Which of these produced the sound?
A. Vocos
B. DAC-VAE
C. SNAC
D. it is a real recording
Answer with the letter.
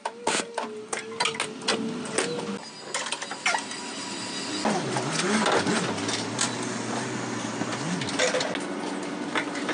D